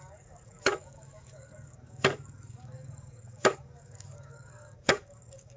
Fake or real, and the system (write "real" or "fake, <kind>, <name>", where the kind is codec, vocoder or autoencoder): fake, codec, DAC